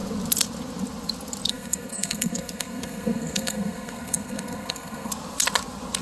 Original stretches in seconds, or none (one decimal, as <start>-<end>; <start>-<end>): 0.0-1.5; 5.1-6.0